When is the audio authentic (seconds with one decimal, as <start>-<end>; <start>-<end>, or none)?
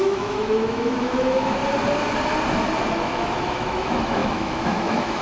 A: 1.6-2.9